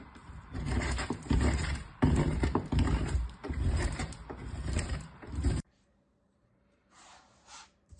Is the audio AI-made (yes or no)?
yes